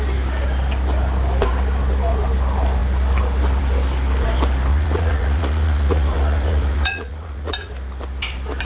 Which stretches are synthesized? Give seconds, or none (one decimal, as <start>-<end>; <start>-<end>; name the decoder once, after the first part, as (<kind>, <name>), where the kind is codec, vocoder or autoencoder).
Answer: 4.7-7.7 (vocoder, Vocos)